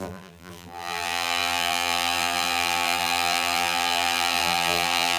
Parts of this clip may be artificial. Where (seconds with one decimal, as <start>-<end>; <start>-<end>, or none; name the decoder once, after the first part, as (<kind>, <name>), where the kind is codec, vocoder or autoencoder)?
0.0-5.2 (vocoder, BigVGAN v2)